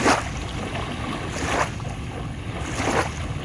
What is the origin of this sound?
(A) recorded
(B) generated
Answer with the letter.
A